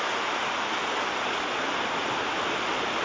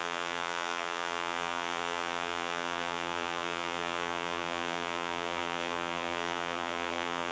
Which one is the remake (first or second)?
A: second